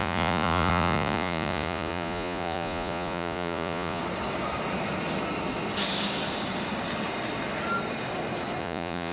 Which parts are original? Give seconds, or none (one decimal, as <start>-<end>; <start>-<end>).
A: 4.0-8.6